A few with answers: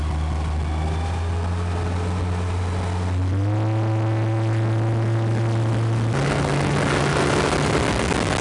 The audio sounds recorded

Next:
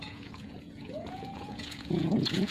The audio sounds remade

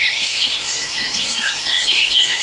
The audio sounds remade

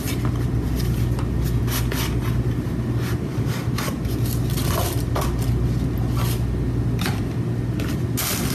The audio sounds recorded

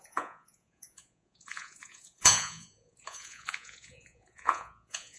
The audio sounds remade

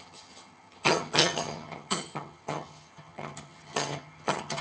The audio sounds remade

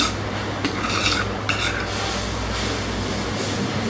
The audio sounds recorded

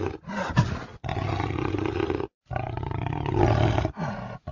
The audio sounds recorded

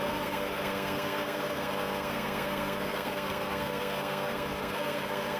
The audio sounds remade